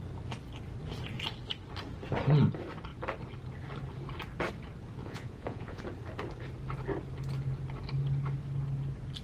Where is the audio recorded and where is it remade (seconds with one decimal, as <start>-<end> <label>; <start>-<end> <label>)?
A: 0.0-5.0 recorded; 5.0-5.8 remade; 5.8-9.2 recorded